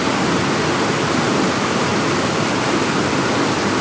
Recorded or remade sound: recorded